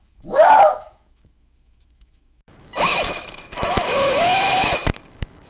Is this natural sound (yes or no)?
no